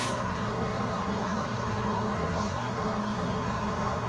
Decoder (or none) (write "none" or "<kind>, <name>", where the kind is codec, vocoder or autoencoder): codec, SNAC